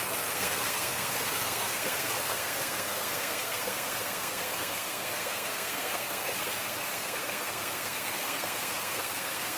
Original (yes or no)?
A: no